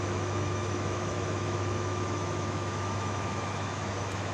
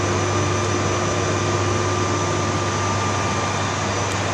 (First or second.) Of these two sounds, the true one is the second